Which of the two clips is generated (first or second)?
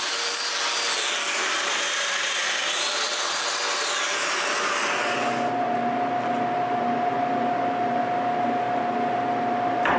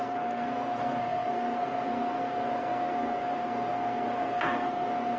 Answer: second